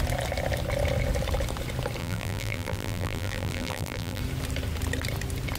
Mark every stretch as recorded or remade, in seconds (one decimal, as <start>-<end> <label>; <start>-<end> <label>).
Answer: 0.0-2.0 recorded; 2.0-4.2 remade; 4.2-5.6 recorded